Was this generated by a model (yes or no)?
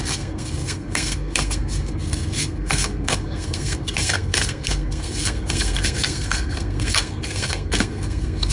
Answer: yes